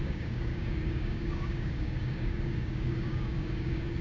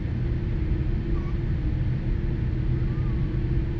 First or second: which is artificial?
first